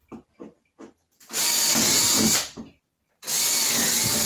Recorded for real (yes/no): yes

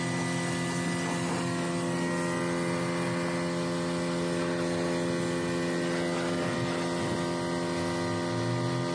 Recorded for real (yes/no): yes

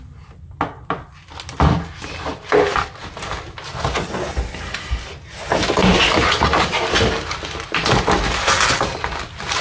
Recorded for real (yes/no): yes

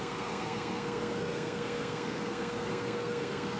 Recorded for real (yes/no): no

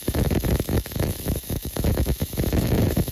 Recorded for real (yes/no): no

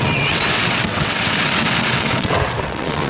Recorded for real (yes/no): no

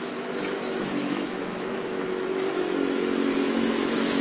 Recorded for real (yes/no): no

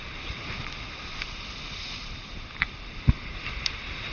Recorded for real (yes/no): yes